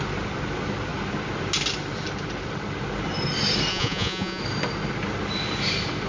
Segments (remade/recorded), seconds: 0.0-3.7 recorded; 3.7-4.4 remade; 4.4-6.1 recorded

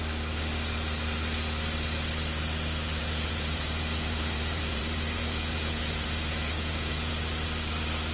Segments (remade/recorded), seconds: 0.0-3.0 recorded; 3.0-7.1 remade; 7.1-8.1 recorded

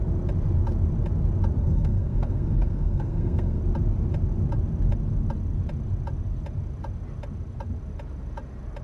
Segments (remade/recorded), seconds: 0.0-1.6 recorded; 1.6-3.6 remade; 3.6-8.8 recorded

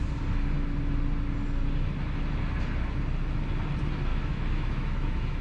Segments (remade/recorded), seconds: 0.0-4.1 recorded; 4.1-5.4 remade